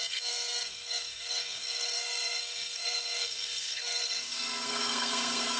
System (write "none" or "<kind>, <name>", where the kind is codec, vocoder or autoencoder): codec, SNAC